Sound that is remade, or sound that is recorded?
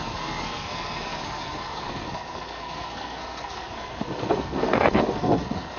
remade